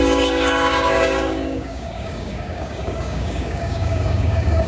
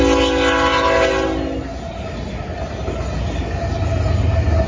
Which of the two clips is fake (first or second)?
first